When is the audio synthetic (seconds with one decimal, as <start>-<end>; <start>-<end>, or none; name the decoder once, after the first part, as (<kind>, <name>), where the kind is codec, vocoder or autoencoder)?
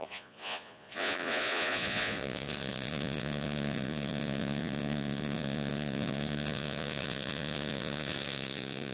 0.0-8.9 (vocoder, Vocos)